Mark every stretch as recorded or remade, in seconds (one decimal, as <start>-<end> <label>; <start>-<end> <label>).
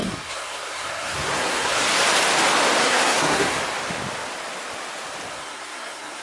0.0-1.7 remade; 1.7-2.8 recorded; 2.8-3.6 remade; 3.6-5.3 recorded; 5.3-6.2 remade